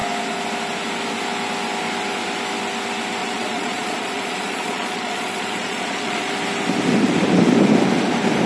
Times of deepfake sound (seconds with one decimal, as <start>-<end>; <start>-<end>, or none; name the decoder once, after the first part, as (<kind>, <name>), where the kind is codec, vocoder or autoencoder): 3.2-6.3 (vocoder, Vocos)